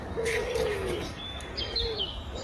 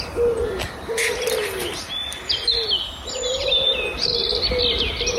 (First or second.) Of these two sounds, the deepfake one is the first